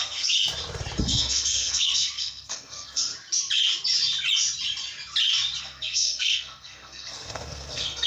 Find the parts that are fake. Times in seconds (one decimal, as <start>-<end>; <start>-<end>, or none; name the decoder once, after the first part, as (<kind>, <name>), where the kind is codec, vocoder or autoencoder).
0.0-0.4 (codec, SNAC); 1.0-3.1; 5.6-8.1